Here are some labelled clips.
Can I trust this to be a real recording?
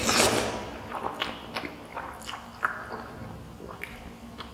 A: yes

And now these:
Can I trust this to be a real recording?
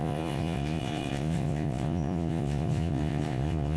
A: no